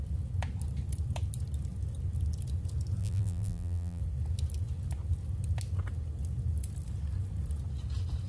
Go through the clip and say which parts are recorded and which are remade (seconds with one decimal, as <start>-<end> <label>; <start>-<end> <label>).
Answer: 0.0-3.0 recorded; 3.0-4.0 remade; 4.0-8.3 recorded